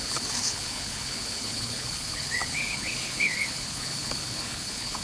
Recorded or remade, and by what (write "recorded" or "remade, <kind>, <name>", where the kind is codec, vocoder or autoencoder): remade, codec, HILCodec